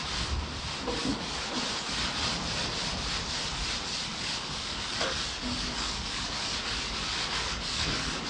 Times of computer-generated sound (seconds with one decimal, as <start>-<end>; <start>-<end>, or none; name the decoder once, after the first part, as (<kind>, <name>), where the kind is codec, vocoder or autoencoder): 1.0-1.6 (codec, DAC); 4.1-8.3